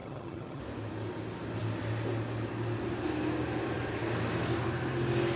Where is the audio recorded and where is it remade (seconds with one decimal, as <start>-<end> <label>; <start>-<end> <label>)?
0.0-0.6 remade; 0.6-5.4 recorded